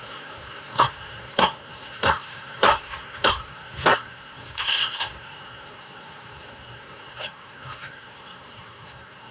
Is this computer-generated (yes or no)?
yes